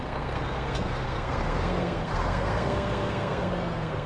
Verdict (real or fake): fake